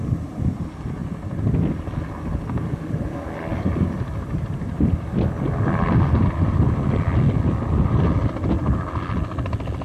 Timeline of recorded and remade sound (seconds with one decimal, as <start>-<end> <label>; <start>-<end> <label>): 0.0-3.5 recorded; 3.5-4.7 remade; 4.7-9.8 recorded